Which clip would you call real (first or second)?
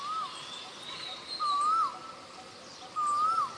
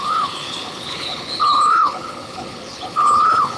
first